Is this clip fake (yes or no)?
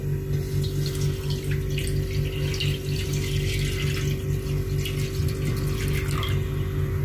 no